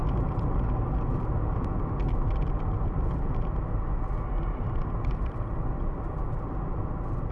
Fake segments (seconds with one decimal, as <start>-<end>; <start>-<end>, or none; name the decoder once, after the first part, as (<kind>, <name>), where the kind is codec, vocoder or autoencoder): none